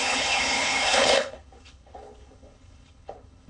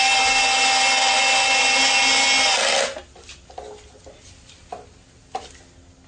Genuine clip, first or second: second